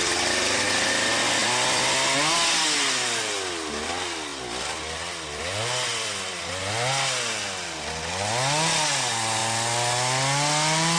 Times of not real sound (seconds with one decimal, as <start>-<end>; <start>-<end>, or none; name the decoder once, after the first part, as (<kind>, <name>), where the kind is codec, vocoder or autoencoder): 1.4-1.9 (vocoder, BigVGAN v2); 5.9-6.5